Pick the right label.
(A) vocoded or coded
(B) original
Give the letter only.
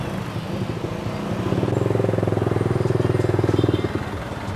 B